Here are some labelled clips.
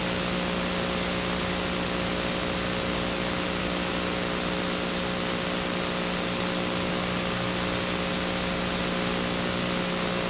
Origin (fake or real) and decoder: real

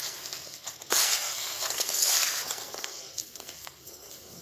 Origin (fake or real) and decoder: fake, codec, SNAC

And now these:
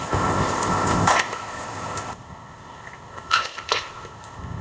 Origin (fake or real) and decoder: fake, codec, ZipCodec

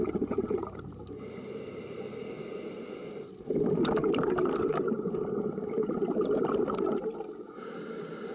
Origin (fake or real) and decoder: real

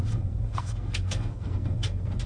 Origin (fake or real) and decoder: fake, codec, SNAC